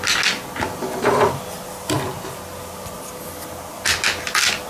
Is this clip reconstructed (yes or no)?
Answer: no